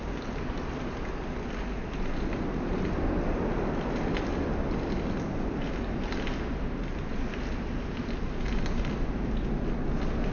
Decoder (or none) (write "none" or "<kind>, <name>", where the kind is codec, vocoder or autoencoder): none